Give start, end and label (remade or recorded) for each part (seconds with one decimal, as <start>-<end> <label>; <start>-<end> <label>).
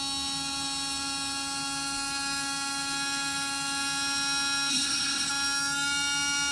0.0-4.7 recorded; 4.7-5.3 remade; 5.3-6.5 recorded